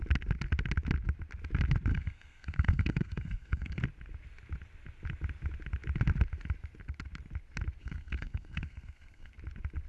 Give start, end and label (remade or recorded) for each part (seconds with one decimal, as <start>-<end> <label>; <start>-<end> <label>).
0.0-1.9 recorded; 1.9-3.8 remade; 3.8-7.8 recorded; 7.8-9.3 remade; 9.3-9.9 recorded